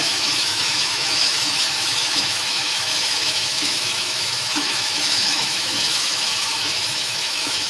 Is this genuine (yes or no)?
no